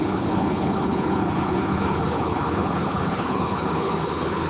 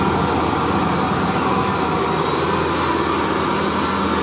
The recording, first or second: second